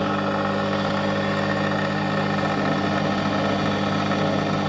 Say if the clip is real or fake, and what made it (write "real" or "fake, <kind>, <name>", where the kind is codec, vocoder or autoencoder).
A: real